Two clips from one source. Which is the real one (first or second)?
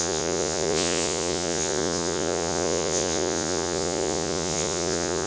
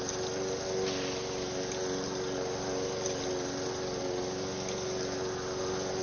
second